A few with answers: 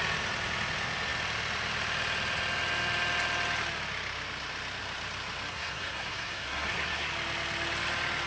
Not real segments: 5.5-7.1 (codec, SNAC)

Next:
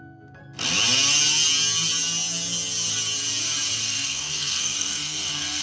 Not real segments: 0.0-0.4 (codec, SNAC); 3.8-5.6

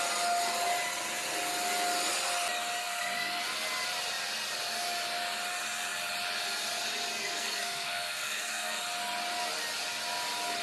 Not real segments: 2.8-3.4 (codec, SNAC); 7.2-8.8

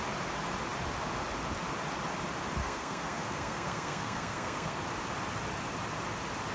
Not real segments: 2.6-4.8 (codec, SNAC)

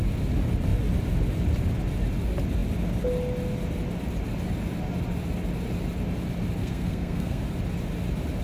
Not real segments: 6.6-7.4 (codec, SNAC)

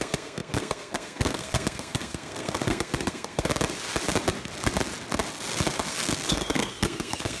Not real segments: 0.0-3.5 (codec, SNAC); 5.9-7.4

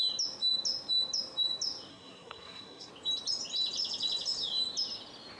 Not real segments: 1.9-2.9 (codec, SNAC)

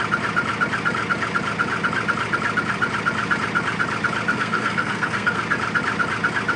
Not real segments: 4.3-5.4 (codec, SNAC)